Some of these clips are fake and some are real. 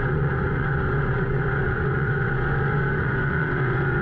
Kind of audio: fake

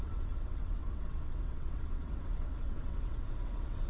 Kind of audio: fake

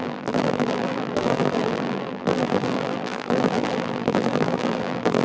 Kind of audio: fake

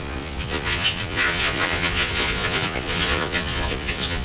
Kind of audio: fake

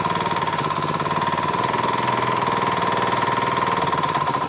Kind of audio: real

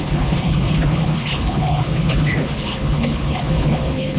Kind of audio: fake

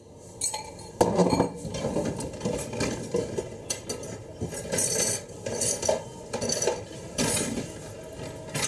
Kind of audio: real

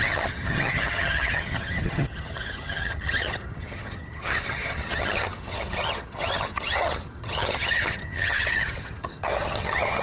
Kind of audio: fake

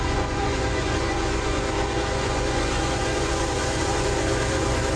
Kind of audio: fake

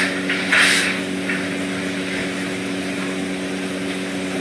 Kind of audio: real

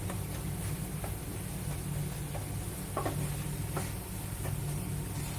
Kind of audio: real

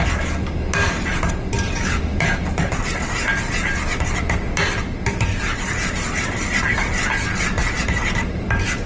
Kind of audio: real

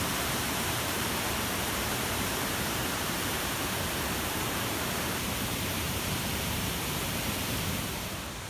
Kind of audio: fake